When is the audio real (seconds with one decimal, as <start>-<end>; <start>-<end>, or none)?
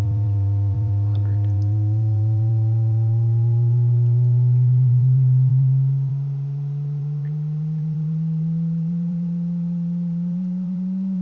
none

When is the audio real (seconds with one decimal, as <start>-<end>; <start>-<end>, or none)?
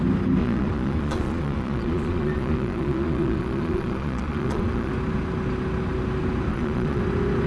0.0-0.4; 4.9-6.5; 7.0-7.5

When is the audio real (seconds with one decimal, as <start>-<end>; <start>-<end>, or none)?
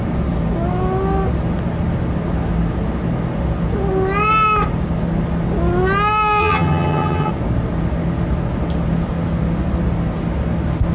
0.0-6.4; 7.3-10.9